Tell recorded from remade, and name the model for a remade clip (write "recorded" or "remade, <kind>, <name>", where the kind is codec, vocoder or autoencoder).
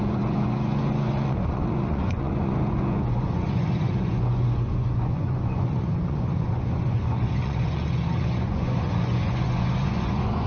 remade, vocoder, Vocos